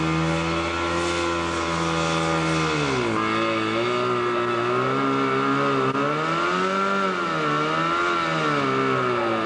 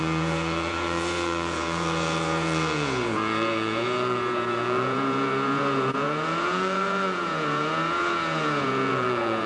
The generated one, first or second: second